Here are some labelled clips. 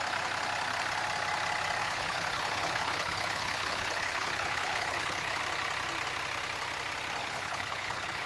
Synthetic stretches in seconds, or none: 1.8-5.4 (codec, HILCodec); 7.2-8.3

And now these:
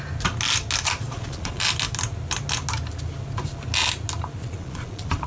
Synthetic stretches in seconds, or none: 1.1-1.6 (vocoder, Vocos); 4.4-5.3

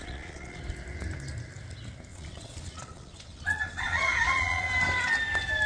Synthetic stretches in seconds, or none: 0.0-0.6 (vocoder, Vocos); 2.1-4.7